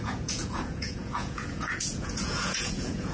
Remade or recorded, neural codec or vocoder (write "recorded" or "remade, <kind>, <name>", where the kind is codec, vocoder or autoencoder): remade, vocoder, Vocos